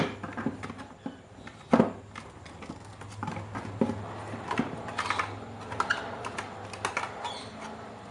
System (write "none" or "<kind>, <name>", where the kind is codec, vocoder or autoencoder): none